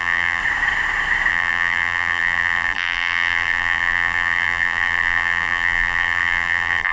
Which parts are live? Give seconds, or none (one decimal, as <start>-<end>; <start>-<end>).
0.4-1.3